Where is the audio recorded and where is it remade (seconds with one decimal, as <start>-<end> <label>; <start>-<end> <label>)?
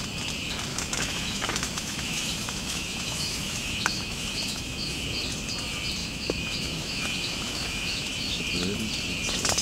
0.0-0.7 recorded; 0.7-5.0 remade; 5.0-6.0 recorded; 6.0-8.4 remade; 8.4-9.6 recorded